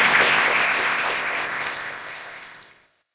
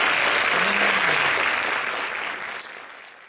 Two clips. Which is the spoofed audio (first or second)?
first